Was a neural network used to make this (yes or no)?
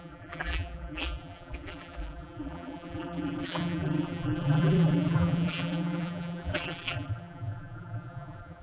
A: yes